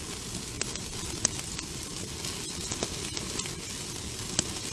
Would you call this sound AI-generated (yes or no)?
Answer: no